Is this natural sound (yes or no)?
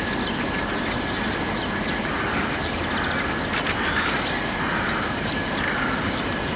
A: yes